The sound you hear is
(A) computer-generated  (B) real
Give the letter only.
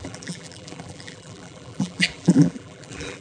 A